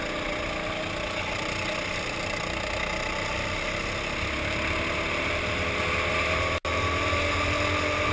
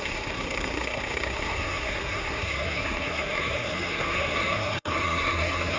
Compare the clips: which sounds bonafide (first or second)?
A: first